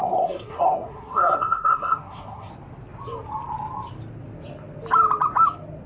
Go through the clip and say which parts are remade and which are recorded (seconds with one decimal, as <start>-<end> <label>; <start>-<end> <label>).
0.0-2.5 remade; 2.5-5.9 recorded